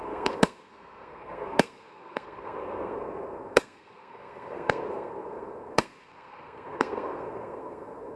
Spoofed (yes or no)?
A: yes